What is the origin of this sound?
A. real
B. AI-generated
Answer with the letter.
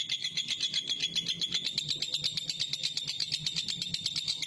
A